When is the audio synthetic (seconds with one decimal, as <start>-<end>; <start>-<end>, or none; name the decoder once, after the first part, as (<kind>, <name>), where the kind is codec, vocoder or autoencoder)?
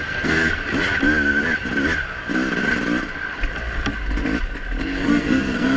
0.0-0.6 (codec, SNAC); 4.8-5.8